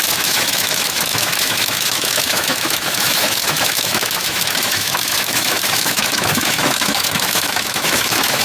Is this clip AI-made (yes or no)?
yes